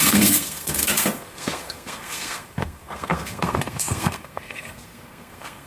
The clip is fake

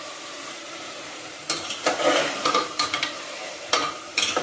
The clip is fake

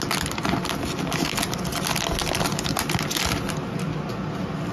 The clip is real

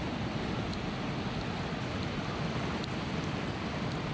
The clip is real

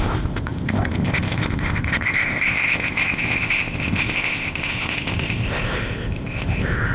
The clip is fake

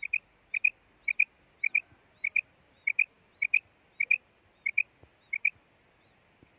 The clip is real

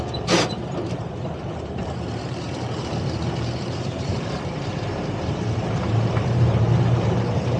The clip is fake